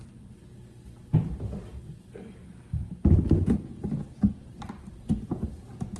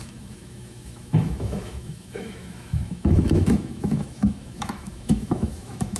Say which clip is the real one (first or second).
first